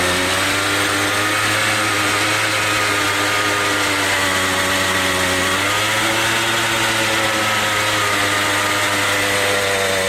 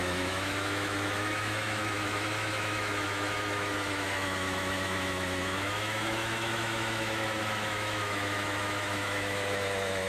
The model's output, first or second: second